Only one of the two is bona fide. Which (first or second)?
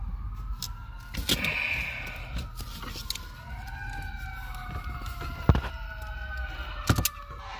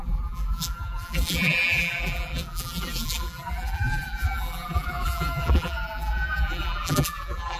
first